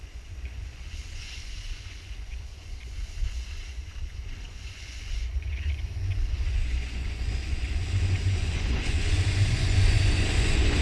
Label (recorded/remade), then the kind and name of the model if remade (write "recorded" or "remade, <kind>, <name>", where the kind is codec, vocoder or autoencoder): remade, vocoder, Vocos